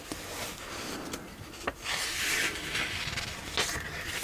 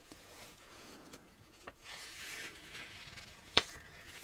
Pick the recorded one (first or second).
first